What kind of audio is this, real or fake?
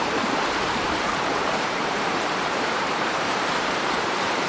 fake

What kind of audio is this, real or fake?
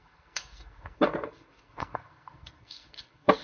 fake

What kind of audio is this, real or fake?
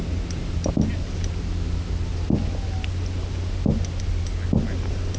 real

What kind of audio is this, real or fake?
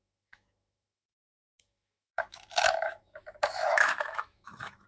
fake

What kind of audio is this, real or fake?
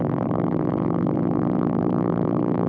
fake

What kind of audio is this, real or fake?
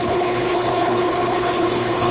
fake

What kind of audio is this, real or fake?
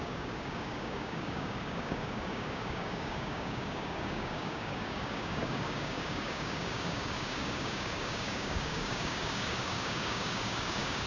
fake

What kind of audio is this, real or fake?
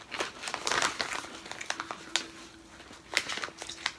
real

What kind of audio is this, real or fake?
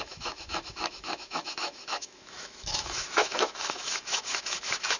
fake